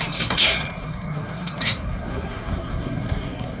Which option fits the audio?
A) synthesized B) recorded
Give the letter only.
A